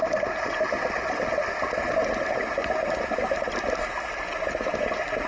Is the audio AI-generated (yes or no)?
no